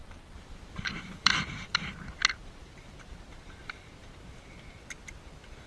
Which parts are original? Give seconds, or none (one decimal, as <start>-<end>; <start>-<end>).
1.9-2.4; 4.2-5.7